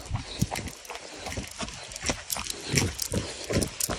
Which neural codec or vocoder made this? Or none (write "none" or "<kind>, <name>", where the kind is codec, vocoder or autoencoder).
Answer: none